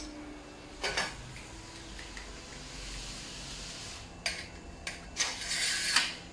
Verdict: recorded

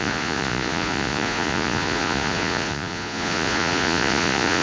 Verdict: remade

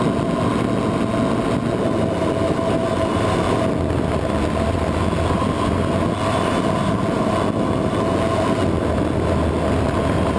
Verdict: recorded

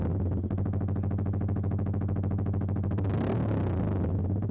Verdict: recorded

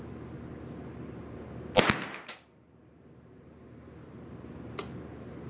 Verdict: recorded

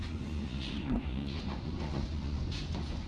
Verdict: remade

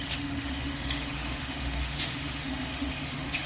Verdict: remade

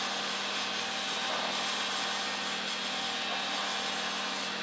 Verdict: recorded